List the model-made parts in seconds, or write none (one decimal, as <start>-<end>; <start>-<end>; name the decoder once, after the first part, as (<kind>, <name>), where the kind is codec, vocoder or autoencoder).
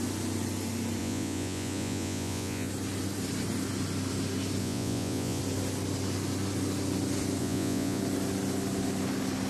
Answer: 1.0-2.7 (vocoder, Vocos); 4.6-5.4; 7.4-8.0